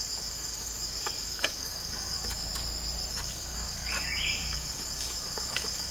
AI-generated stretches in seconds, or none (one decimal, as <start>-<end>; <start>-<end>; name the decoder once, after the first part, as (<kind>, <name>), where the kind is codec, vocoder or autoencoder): 0.0-2.5 (codec, DAC); 3.1-5.9